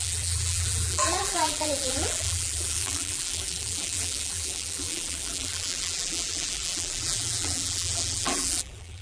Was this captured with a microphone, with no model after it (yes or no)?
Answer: no